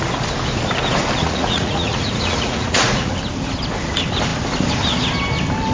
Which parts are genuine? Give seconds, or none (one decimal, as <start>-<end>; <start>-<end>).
0.0-1.2; 3.1-5.7